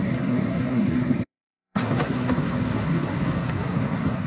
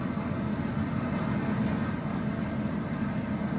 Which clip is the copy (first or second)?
first